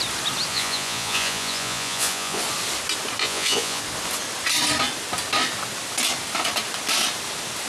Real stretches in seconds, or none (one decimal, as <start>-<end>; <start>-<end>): 0.0-0.5; 2.4-3.2; 3.8-7.7